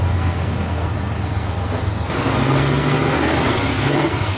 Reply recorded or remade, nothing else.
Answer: remade